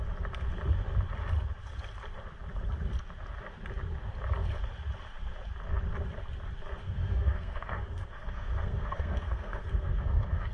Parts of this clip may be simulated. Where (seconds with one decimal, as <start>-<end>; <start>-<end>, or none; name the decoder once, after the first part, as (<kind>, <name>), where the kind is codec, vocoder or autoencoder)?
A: 6.8-10.5 (codec, SNAC)